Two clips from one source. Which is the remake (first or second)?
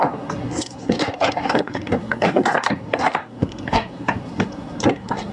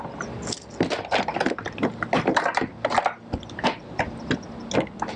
first